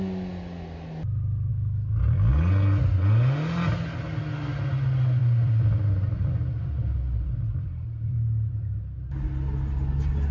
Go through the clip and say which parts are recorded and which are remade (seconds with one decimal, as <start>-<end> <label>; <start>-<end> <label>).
0.0-5.2 recorded; 5.2-8.8 remade; 8.8-10.3 recorded